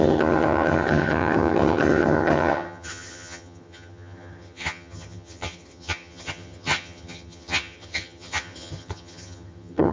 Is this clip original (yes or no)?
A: no